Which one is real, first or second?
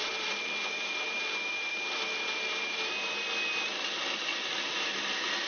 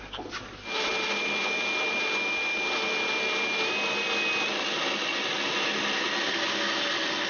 second